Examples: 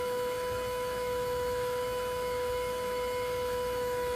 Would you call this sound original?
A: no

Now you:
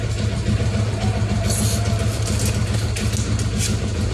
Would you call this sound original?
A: yes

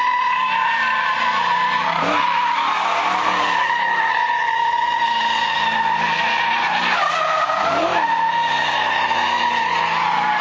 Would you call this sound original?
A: yes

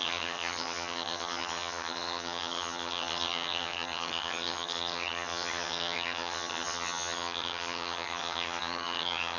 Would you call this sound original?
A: no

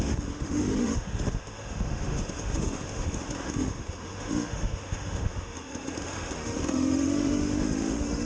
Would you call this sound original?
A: no